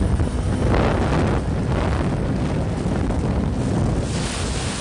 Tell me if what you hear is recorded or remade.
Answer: recorded